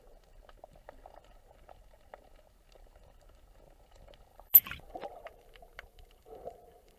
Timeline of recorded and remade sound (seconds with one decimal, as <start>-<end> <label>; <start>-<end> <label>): 0.0-4.3 recorded; 4.3-7.0 remade